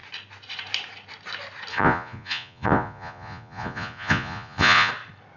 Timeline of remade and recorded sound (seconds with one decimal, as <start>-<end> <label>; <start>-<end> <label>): 0.0-1.7 recorded; 1.7-4.9 remade; 4.9-5.4 recorded